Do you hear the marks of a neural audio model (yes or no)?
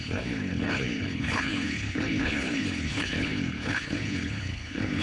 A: yes